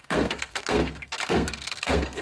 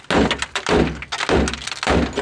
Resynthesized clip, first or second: first